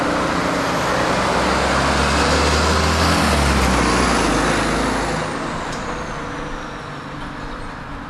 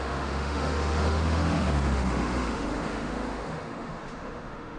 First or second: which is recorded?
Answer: first